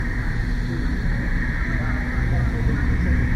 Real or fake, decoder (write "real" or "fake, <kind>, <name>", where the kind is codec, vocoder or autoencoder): real